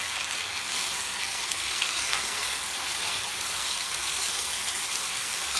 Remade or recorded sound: remade